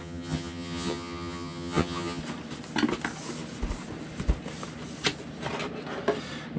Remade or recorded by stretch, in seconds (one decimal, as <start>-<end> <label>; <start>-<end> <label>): 0.0-2.2 remade; 2.2-6.6 recorded